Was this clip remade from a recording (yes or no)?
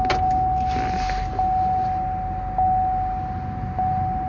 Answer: no